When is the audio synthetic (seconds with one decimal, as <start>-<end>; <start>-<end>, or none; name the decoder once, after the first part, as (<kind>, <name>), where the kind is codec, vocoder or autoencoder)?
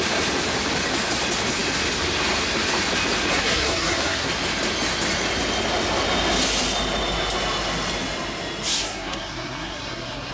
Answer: 3.3-4.3 (codec, SNAC); 8.7-10.3